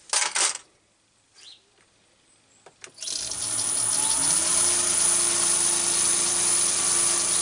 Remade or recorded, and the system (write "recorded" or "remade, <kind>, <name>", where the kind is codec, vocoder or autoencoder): recorded